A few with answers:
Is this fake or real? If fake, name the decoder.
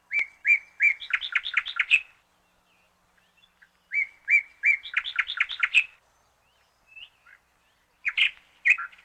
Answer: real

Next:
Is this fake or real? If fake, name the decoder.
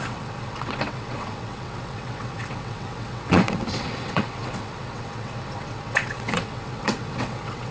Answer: fake, vocoder, WaveNeXt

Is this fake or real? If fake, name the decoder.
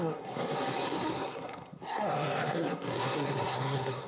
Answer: fake, codec, SNAC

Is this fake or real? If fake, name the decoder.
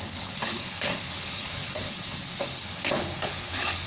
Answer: fake, codec, HILCodec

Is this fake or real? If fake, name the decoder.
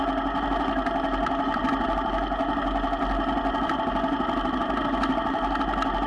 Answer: real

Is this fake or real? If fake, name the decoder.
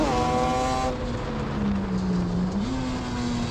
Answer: real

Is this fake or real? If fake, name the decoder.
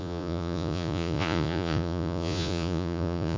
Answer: fake, vocoder, Vocos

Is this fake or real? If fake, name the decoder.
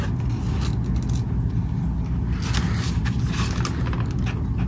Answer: real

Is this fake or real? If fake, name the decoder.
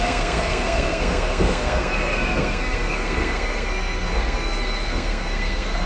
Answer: fake, codec, SNAC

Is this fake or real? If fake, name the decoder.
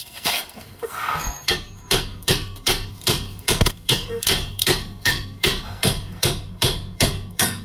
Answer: fake, codec, SNAC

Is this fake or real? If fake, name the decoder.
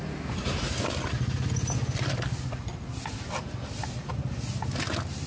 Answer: real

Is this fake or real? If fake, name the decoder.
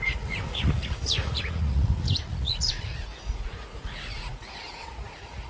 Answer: fake, vocoder, Vocos